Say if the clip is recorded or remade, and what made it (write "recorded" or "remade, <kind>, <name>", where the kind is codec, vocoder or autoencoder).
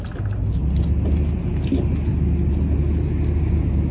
recorded